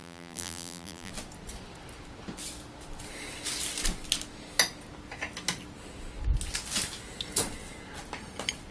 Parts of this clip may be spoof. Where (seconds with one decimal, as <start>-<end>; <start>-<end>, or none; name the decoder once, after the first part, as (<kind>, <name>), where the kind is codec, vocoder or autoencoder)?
0.0-1.1 (vocoder, BigVGAN v2)